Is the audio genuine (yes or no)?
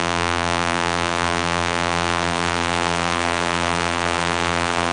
no